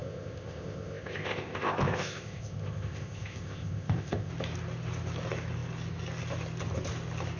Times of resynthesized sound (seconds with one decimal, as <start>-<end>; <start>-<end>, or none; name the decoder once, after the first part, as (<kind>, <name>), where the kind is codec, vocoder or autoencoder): 0.0-4.3 (codec, ZipCodec)